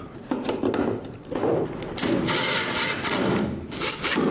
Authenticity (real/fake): fake